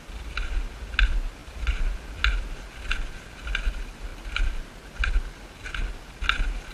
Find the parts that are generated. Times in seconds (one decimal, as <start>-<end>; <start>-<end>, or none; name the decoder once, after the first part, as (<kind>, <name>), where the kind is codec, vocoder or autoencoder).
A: none